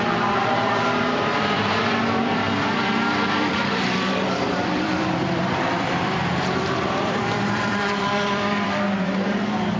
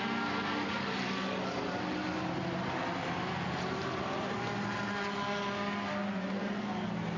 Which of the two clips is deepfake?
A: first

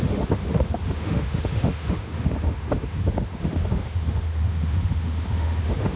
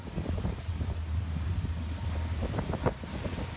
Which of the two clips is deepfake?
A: first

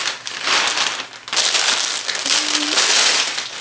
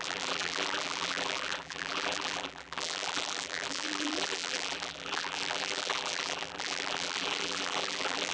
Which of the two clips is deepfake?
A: second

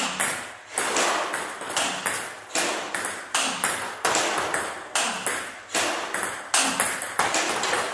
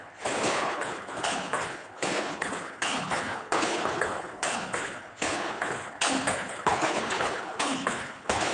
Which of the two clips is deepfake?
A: second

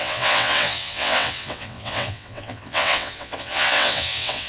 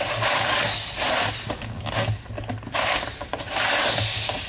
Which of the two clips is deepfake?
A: first